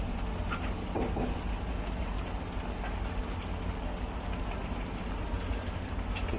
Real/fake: real